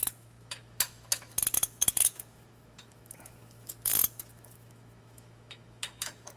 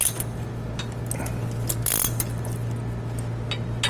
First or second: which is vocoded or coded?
first